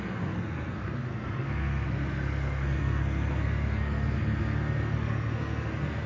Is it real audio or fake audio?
fake